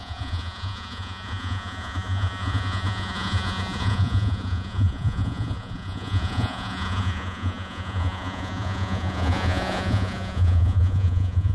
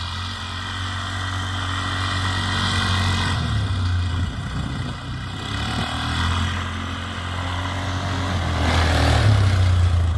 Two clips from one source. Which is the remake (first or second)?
first